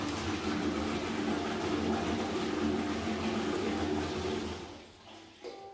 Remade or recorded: recorded